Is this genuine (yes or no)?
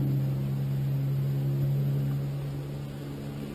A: yes